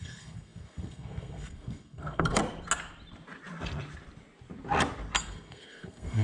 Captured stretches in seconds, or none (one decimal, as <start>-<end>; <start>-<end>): 2.4-5.2